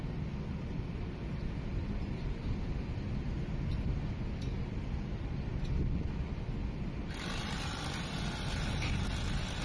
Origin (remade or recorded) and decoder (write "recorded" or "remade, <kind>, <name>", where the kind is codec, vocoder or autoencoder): recorded